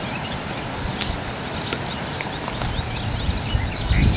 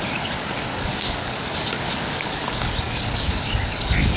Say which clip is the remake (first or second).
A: second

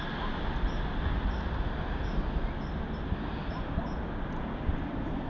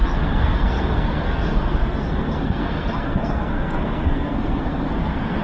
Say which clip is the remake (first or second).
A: second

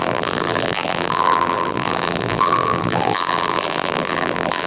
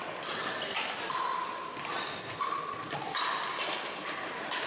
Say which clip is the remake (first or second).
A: first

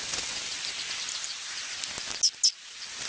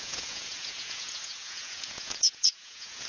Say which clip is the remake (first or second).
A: second